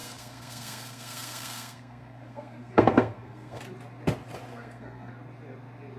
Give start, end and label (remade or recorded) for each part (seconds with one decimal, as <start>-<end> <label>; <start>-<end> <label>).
0.0-3.6 remade; 3.6-4.5 recorded; 4.5-5.1 remade; 5.1-6.0 recorded